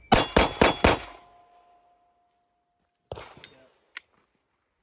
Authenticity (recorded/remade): recorded